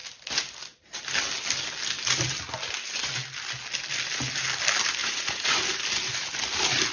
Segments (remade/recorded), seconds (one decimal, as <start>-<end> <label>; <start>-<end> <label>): 0.0-5.0 recorded; 5.0-5.6 remade; 5.6-6.9 recorded